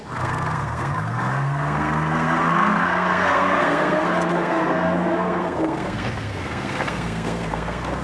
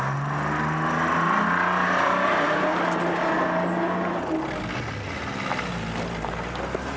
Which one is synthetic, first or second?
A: first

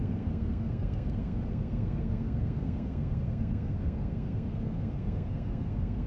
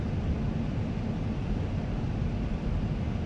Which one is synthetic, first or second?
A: first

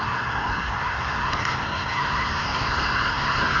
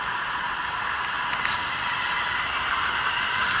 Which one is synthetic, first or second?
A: first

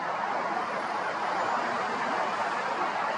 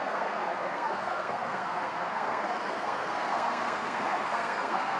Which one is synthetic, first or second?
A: second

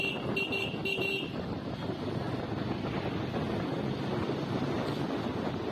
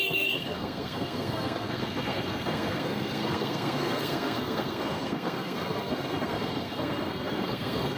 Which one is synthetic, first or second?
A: second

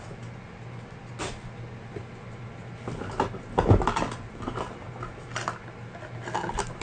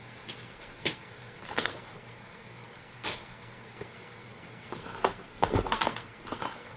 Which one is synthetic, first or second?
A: second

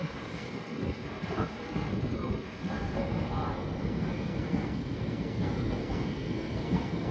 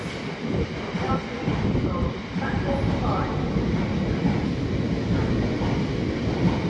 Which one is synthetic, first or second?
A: first